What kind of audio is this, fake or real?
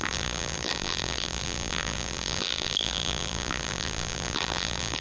fake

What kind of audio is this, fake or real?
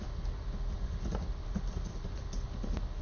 real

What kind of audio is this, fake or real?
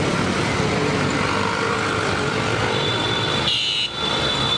real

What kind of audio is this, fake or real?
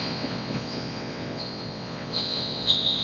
fake